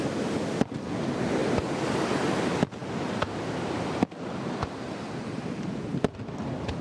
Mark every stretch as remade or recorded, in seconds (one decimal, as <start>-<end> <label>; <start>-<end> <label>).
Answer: 0.0-6.8 recorded